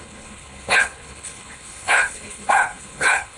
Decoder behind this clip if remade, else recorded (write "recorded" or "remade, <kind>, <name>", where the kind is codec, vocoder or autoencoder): remade, codec, HILCodec